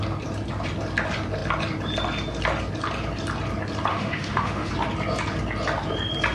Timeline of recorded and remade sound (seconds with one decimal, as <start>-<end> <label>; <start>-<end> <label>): 0.0-3.9 recorded; 3.9-4.7 remade; 4.7-6.3 recorded